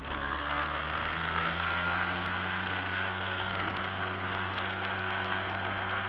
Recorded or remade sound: remade